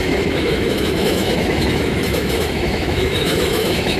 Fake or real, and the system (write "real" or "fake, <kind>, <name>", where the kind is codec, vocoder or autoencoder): fake, autoencoder, DAC-VAE